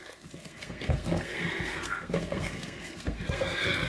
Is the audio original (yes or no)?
no